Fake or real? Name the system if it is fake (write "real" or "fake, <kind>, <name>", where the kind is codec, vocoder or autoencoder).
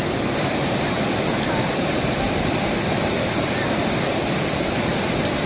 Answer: real